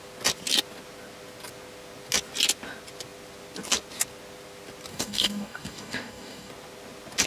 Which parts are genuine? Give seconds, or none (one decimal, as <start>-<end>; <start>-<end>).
0.0-4.9; 6.5-7.3